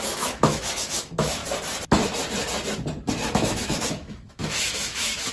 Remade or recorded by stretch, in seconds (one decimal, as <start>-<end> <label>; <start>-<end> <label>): 0.0-1.4 remade; 1.4-3.3 recorded; 3.3-5.3 remade